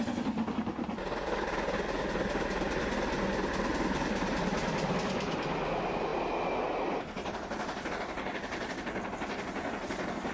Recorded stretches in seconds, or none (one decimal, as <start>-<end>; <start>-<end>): 0.0-10.3